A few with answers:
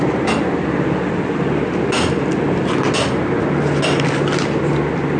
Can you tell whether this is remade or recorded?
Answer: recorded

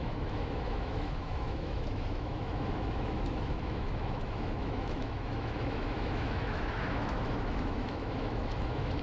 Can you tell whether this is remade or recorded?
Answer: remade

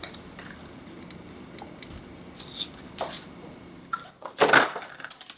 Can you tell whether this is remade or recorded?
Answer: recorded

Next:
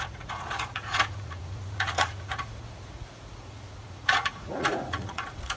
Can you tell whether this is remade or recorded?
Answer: remade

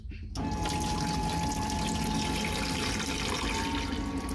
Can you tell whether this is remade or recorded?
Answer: recorded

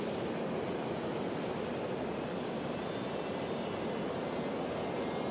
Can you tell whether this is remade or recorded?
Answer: recorded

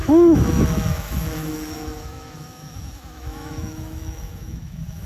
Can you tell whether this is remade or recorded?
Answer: remade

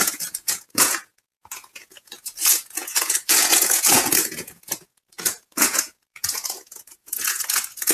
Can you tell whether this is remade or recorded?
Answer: remade